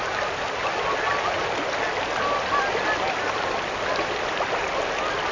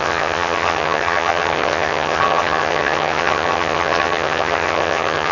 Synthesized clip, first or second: second